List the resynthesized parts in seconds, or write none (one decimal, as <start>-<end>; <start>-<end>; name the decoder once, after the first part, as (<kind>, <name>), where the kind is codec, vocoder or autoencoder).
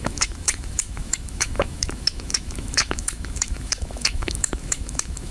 0.0-5.3 (autoencoder, DAC-VAE)